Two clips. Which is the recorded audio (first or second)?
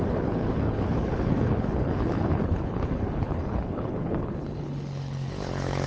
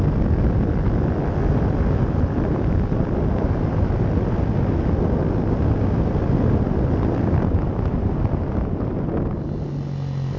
second